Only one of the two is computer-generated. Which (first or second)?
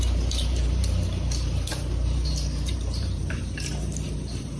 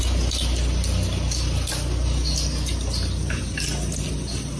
first